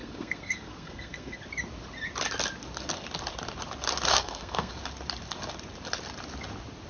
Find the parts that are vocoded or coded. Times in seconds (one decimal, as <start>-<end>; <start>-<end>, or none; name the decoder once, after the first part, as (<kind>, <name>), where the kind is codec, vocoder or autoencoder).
0.0-1.4 (codec, SNAC); 4.1-4.7